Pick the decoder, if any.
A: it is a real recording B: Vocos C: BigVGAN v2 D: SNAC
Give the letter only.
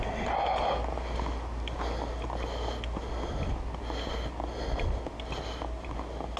A